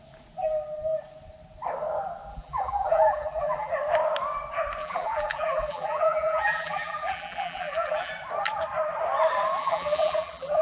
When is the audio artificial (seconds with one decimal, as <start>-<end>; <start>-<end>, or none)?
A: 2.3-3.7; 4.8-8.1; 9.6-10.6